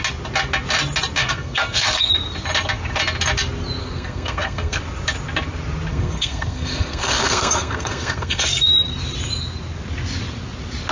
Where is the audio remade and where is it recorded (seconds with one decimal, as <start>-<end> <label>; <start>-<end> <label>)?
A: 0.0-1.2 recorded; 1.2-2.1 remade; 2.1-3.8 recorded; 3.8-4.8 remade; 4.8-5.9 recorded; 5.9-8.6 remade; 8.6-10.9 recorded